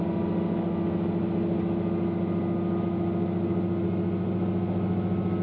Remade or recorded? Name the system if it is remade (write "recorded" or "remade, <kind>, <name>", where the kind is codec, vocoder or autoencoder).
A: recorded